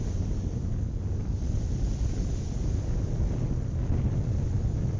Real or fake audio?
real